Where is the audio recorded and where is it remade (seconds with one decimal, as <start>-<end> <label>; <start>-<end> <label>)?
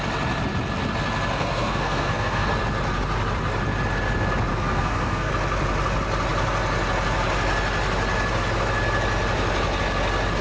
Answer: 0.0-1.4 recorded; 1.4-2.5 remade; 2.5-4.5 recorded; 4.5-5.3 remade; 5.3-10.4 recorded